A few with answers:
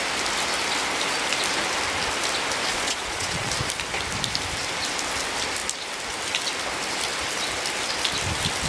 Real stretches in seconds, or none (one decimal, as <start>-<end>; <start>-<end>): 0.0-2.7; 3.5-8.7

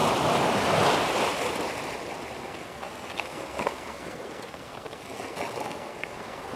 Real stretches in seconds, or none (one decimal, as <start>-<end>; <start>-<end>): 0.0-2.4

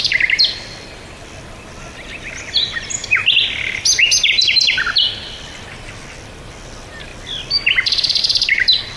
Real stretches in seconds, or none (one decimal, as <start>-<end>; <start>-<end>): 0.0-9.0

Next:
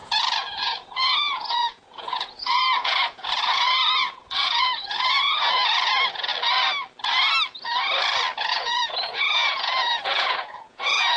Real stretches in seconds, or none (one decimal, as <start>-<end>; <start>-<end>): 6.3-8.5

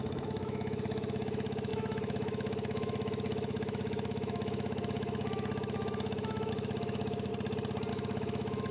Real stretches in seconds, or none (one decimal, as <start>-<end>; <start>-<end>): 7.3-7.9

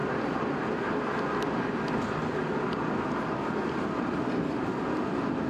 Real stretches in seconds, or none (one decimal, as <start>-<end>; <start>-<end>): 0.7-5.5